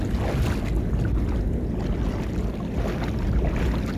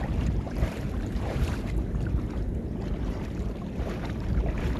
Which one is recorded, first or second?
first